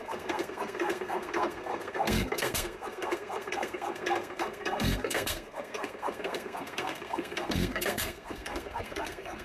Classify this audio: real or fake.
fake